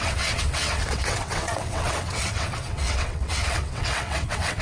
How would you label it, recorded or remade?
remade